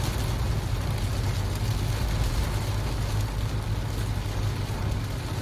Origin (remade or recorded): recorded